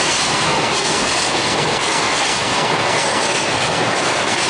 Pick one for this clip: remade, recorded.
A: remade